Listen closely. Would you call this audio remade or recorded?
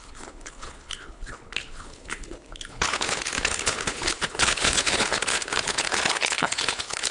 remade